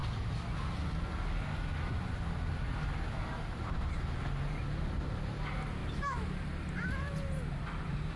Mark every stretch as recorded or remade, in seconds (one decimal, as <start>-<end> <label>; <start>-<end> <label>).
0.0-5.8 recorded; 5.8-6.3 remade; 6.3-8.2 recorded